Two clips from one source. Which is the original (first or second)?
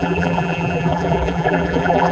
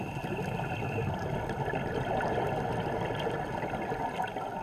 second